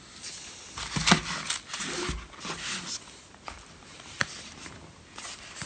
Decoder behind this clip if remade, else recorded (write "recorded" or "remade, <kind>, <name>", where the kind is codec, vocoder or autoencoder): recorded